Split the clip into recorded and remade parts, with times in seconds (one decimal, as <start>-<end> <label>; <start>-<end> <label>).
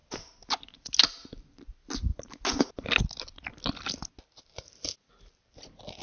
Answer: 0.0-6.0 recorded